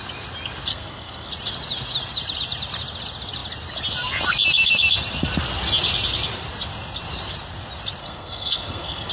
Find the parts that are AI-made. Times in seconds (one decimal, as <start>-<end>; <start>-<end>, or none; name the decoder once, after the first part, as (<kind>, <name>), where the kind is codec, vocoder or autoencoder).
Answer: 0.7-1.3 (codec, SNAC); 8.0-9.1